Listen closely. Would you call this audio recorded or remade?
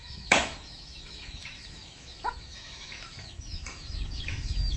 remade